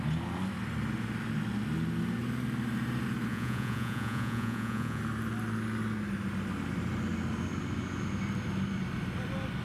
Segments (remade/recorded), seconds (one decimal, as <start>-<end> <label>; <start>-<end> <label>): 0.0-3.3 recorded; 3.3-5.0 remade; 5.0-9.6 recorded